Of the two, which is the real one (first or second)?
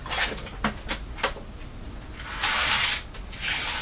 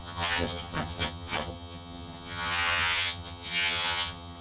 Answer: first